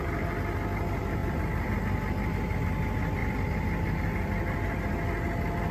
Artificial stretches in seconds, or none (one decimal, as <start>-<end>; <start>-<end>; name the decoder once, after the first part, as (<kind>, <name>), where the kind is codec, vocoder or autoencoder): 1.2-1.8 (vocoder, BigVGAN v2); 3.2-4.8